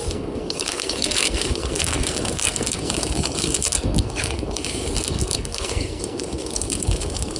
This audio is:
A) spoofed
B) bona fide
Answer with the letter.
A